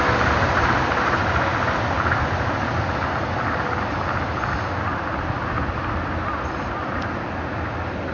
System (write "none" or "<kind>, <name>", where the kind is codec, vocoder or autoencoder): none